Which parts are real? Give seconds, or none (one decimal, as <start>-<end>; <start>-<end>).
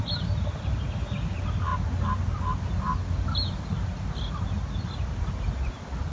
0.0-6.1